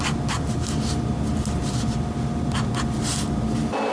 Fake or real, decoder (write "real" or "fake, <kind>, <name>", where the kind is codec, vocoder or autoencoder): real